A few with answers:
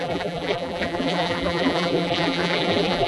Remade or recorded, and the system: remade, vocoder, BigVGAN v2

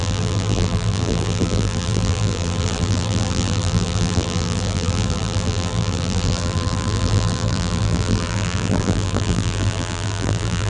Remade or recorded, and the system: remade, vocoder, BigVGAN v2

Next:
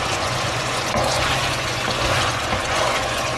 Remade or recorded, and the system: remade, vocoder, Vocos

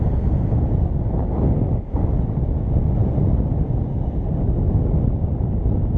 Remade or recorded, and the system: recorded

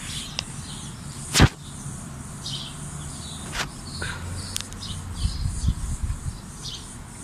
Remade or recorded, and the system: recorded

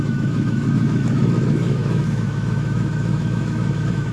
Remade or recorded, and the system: remade, autoencoder, DAC-VAE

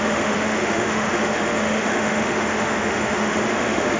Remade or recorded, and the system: remade, autoencoder, DAC-VAE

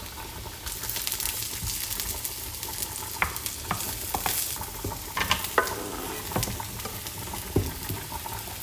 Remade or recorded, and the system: recorded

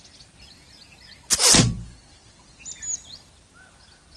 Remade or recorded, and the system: recorded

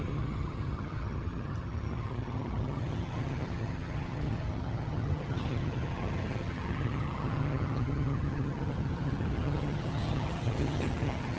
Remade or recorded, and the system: remade, vocoder, HiFi-GAN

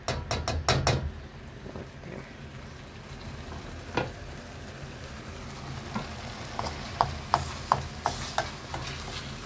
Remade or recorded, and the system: recorded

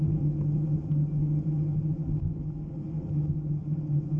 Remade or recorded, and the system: recorded